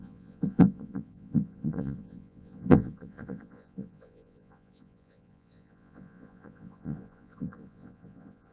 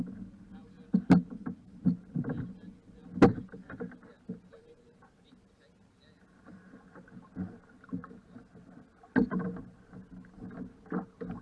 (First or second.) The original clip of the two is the second